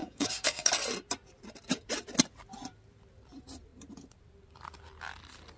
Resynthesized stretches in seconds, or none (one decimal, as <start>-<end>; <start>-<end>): 0.0-0.7